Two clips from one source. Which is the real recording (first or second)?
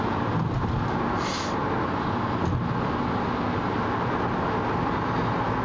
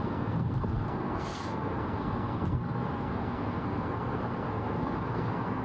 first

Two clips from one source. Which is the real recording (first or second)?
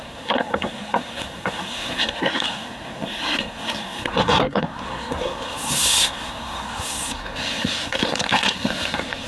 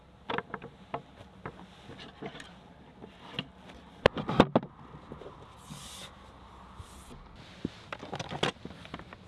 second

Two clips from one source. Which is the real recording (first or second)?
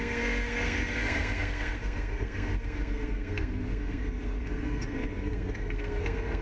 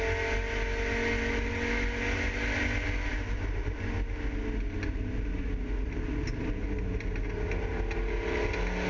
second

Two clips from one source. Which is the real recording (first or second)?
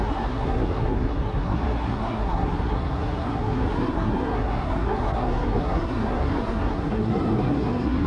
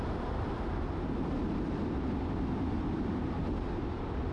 second